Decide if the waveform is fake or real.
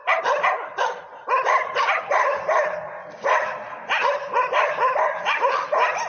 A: real